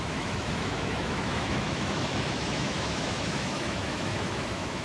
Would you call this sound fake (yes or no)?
yes